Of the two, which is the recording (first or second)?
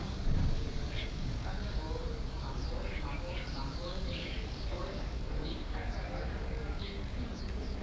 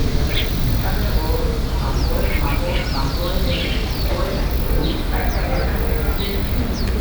second